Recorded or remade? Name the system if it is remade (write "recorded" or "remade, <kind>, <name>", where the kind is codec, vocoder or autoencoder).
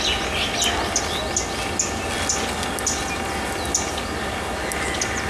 recorded